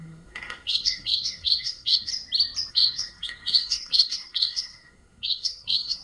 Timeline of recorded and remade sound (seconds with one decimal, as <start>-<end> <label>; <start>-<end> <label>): 0.0-2.1 remade; 2.1-2.7 recorded; 2.7-6.0 remade